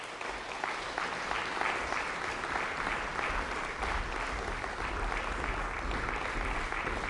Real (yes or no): yes